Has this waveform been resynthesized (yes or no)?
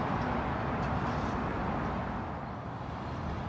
no